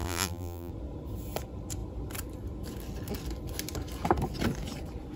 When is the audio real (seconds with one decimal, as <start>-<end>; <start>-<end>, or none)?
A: 0.7-5.2